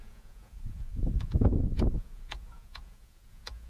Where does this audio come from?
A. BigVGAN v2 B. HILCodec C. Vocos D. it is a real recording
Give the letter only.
C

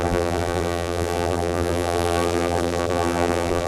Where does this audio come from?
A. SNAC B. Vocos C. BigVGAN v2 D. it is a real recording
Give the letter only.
C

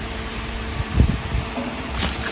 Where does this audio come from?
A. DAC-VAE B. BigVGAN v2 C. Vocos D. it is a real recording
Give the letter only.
B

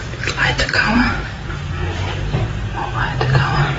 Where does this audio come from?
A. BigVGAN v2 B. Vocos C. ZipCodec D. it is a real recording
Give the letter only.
A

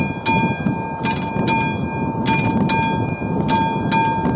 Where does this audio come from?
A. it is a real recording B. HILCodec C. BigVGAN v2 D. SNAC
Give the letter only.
A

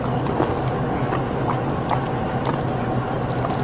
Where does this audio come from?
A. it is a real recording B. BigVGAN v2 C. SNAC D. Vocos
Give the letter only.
A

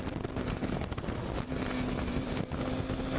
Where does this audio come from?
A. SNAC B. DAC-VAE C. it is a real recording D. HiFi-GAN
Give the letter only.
C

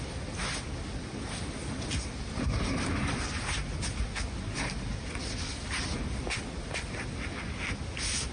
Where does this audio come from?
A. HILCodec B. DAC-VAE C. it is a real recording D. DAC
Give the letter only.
C